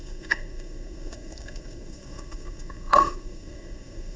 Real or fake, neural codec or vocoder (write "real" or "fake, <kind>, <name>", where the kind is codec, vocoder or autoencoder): fake, codec, SNAC